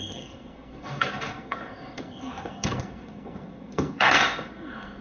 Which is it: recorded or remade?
remade